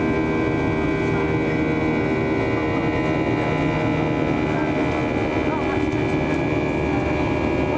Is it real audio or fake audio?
real